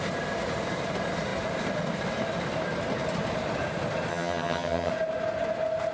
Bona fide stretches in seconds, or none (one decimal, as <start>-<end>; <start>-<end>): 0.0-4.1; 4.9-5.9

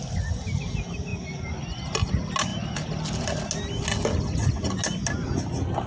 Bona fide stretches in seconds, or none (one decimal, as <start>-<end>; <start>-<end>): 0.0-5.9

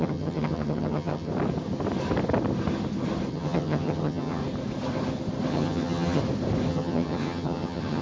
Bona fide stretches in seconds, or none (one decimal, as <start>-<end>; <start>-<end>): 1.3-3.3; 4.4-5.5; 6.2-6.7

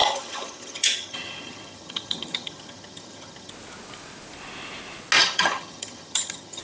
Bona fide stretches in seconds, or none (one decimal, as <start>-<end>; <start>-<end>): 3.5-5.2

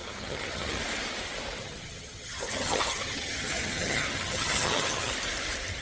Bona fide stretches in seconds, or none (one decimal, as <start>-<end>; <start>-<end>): 0.8-1.6; 5.1-5.8

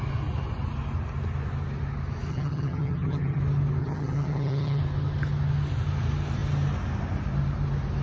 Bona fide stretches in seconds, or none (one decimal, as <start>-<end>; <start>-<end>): 0.0-2.3; 3.4-3.8; 4.8-8.0